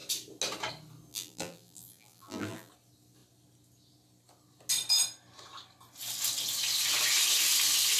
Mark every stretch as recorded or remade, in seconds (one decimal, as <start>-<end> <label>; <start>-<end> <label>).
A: 0.0-1.1 recorded; 1.1-2.7 remade; 2.7-8.0 recorded